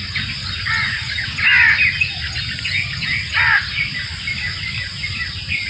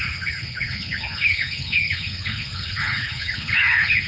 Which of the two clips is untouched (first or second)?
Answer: first